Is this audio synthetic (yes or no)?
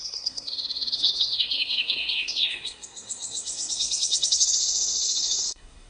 yes